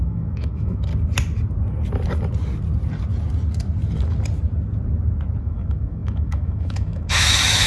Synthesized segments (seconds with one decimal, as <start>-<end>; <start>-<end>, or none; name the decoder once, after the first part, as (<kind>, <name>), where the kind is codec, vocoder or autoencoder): 0.0-0.9 (autoencoder, DAC-VAE); 5.4-7.7

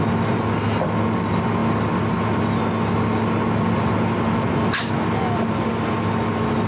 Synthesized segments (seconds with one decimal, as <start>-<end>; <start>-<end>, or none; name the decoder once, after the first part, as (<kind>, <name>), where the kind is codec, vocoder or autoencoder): none

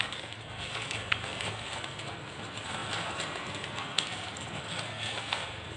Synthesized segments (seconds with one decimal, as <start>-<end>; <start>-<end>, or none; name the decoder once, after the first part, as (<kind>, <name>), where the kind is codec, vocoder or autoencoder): 0.0-5.8 (codec, SNAC)

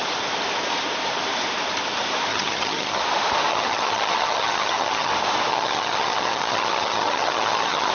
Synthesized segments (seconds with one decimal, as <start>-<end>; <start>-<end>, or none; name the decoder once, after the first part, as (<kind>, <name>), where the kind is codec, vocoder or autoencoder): 2.3-3.0 (vocoder, HiFi-GAN); 3.5-5.1; 5.5-7.9

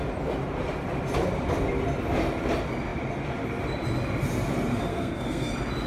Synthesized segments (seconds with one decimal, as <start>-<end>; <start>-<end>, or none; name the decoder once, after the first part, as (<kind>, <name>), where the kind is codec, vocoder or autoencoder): 4.9-5.5 (codec, SNAC)

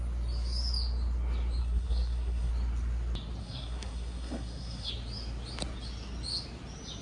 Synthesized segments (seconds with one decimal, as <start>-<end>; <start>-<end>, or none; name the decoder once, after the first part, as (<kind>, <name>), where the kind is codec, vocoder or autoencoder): 1.6-2.5 (codec, SNAC); 3.4-4.9